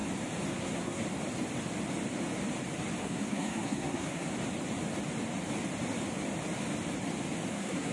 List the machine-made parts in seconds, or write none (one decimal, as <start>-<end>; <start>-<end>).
0.5-1.0; 3.0-4.3; 7.5-7.9